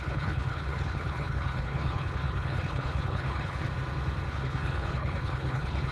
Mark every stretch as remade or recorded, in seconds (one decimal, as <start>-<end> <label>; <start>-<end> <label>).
0.0-3.7 remade; 3.7-4.3 recorded; 4.3-5.9 remade